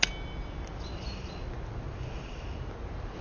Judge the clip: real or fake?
real